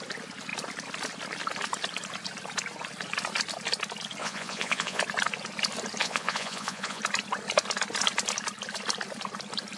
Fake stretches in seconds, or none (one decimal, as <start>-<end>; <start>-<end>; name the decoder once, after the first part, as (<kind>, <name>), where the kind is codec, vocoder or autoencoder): 4.2-5.0 (vocoder, Vocos); 6.0-7.0